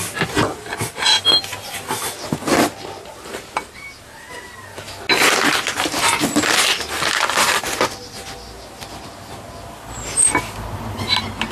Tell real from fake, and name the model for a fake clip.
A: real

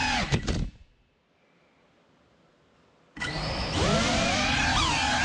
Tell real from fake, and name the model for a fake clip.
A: real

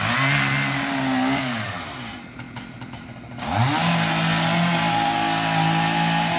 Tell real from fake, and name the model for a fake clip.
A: real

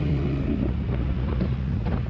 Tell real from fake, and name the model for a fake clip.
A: fake, vocoder, Vocos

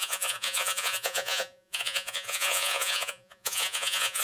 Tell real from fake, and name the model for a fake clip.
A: fake, vocoder, Vocos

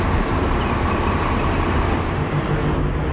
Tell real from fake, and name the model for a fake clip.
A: real